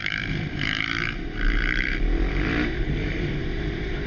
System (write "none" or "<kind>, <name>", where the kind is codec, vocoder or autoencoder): vocoder, BigVGAN v2